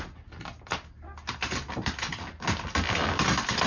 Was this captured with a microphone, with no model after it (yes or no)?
yes